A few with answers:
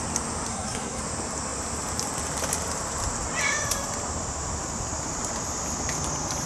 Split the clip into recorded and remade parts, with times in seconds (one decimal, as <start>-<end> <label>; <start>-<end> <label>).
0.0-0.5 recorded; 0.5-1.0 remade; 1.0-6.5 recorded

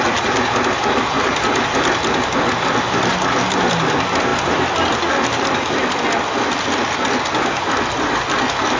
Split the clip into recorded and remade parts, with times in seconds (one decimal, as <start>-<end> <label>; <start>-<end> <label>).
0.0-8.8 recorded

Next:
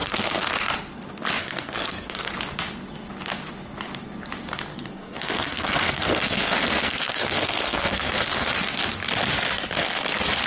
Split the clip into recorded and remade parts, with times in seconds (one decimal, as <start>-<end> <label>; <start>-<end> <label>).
0.0-0.5 remade; 0.5-1.4 recorded; 1.4-2.3 remade; 2.3-4.7 recorded; 4.7-8.6 remade; 8.6-10.5 recorded

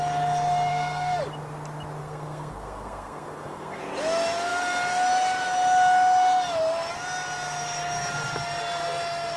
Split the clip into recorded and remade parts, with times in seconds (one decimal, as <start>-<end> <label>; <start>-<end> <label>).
0.0-0.7 recorded; 0.7-1.2 remade; 1.2-2.0 recorded; 2.0-3.8 remade; 3.8-9.4 recorded

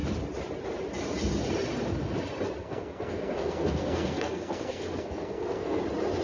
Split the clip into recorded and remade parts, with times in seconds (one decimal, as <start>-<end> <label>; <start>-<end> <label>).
0.0-2.6 recorded; 2.6-5.8 remade; 5.8-6.2 recorded

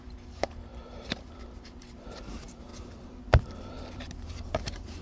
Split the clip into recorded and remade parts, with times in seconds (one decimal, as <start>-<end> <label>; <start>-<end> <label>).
0.0-2.7 remade; 2.7-3.4 recorded; 3.4-5.0 remade

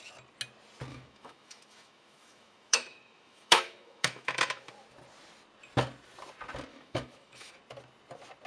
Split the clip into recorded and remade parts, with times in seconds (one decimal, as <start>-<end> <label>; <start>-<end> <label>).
0.0-0.9 recorded; 0.9-4.7 remade; 4.7-6.7 recorded; 6.7-7.5 remade; 7.5-8.5 recorded